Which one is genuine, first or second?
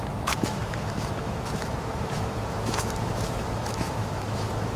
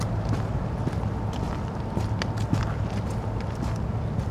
second